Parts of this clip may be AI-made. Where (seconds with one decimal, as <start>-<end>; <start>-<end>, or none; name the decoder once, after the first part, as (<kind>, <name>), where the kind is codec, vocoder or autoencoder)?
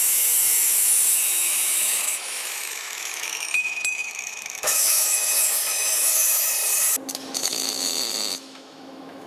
0.0-6.5 (autoencoder, DAC-VAE); 7.1-9.3